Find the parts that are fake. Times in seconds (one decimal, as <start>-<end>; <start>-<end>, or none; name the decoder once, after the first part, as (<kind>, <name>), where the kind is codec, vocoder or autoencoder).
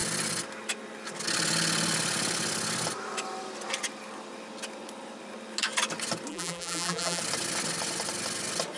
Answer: 6.3-7.2 (vocoder, BigVGAN v2)